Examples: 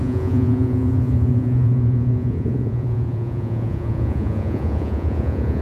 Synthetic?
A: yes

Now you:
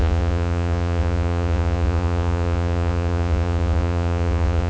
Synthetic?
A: yes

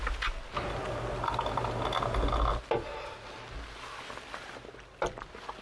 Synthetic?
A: no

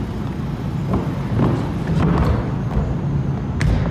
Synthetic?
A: no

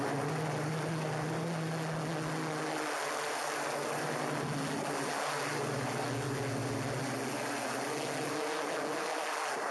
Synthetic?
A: no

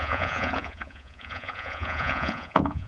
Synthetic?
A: yes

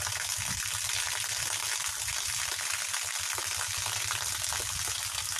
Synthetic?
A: no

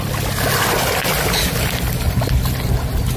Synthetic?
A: no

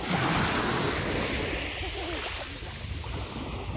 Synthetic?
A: no